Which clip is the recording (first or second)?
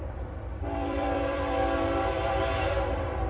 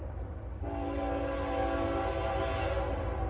second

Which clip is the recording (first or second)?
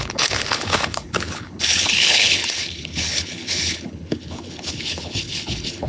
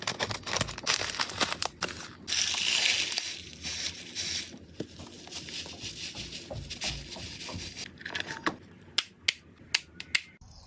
second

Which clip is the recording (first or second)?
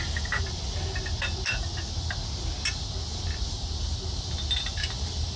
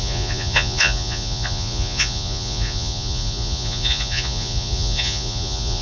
first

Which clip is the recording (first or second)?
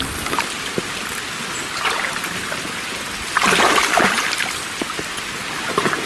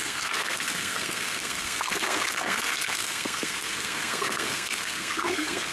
first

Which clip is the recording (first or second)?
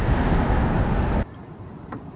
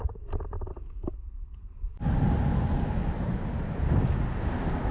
first